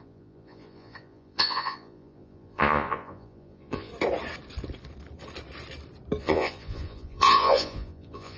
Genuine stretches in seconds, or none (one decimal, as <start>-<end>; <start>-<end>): 3.9-6.2